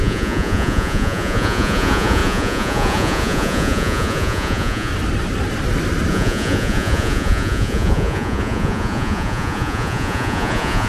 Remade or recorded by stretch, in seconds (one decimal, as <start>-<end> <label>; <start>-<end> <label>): 0.0-4.9 remade; 4.9-6.1 recorded; 6.1-10.9 remade